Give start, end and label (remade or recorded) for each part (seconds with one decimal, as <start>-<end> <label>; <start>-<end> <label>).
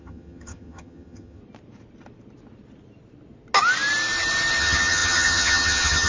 0.0-1.4 remade; 1.4-4.6 recorded; 4.6-6.1 remade